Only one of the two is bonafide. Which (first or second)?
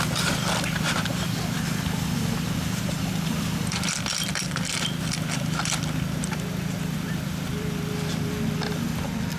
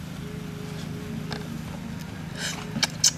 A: second